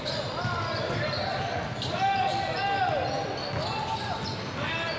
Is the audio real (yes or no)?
yes